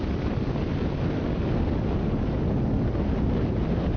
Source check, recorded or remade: recorded